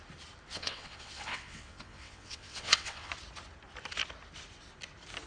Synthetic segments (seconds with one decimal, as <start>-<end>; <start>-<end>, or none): 0.5-3.1